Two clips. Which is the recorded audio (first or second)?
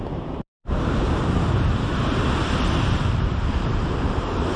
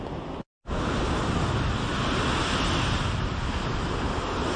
second